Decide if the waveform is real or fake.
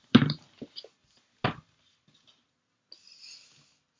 real